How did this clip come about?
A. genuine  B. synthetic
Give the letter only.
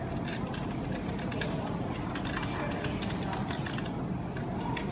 A